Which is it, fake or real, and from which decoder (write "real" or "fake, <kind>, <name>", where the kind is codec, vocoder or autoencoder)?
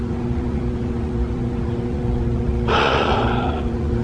fake, vocoder, Vocos